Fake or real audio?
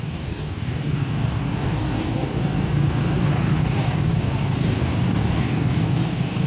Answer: fake